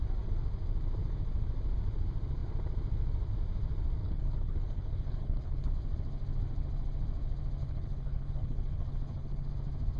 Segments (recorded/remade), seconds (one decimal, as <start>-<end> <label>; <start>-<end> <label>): 0.0-4.0 recorded; 4.0-5.7 remade; 5.7-7.6 recorded; 7.6-9.5 remade; 9.5-10.0 recorded